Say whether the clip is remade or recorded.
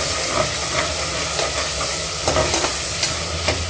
recorded